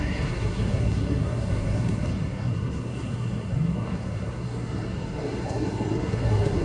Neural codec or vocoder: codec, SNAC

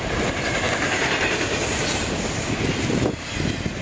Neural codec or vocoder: none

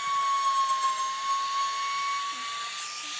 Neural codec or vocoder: none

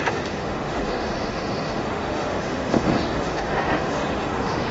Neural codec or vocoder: autoencoder, DAC-VAE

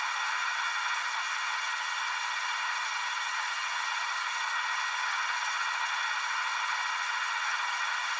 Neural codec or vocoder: vocoder, HiFi-GAN